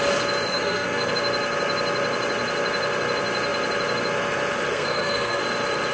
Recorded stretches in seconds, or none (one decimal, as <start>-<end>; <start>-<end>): 0.0-0.5; 1.1-4.7; 5.4-5.9